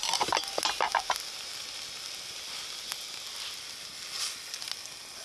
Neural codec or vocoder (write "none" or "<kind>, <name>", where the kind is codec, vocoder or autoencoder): none